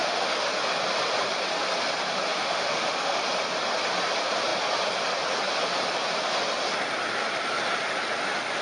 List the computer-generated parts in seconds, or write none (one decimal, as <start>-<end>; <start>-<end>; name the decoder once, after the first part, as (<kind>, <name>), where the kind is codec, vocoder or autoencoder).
0.0-0.5 (autoencoder, DAC-VAE); 2.4-3.2